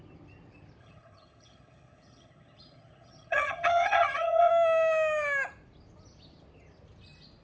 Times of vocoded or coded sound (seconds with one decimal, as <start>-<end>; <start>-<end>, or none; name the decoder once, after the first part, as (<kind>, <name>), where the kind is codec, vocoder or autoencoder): 0.8-4.5 (vocoder, HiFi-GAN)

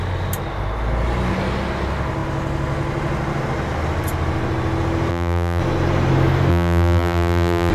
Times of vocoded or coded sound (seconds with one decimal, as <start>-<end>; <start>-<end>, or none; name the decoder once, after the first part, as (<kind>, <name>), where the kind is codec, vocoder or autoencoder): 5.1-5.6 (vocoder, BigVGAN v2); 6.5-7.7

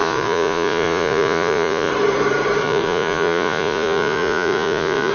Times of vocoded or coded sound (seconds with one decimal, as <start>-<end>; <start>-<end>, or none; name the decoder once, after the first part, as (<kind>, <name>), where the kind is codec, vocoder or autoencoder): 0.0-1.9 (vocoder, Vocos); 2.6-5.1

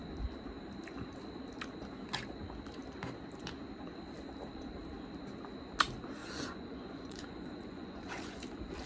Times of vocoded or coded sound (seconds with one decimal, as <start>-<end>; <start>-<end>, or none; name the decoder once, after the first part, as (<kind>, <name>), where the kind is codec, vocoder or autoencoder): 6.2-8.4 (vocoder, Vocos)